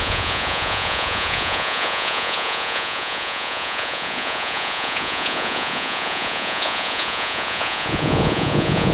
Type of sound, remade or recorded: remade